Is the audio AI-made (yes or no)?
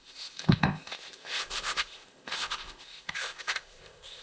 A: yes